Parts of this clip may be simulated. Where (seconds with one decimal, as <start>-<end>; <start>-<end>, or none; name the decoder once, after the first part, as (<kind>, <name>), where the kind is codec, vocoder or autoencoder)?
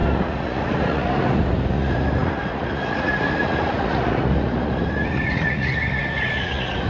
0.0-6.9 (vocoder, Vocos)